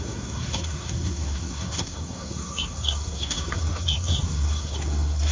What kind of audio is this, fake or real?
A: fake